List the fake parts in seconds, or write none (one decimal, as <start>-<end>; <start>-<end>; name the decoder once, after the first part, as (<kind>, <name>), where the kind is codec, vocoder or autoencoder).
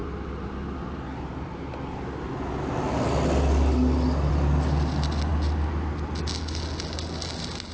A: none